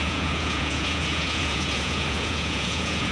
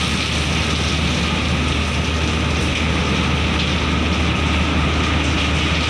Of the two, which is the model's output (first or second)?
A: first